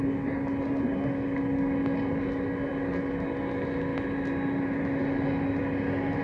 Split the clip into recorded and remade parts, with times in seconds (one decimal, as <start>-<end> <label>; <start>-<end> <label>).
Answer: 0.0-6.2 recorded

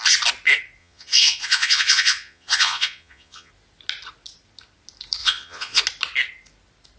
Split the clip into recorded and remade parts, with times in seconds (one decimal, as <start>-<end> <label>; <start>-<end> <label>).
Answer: 0.0-0.8 recorded; 0.8-3.5 remade; 3.5-5.2 recorded; 5.2-5.8 remade; 5.8-7.0 recorded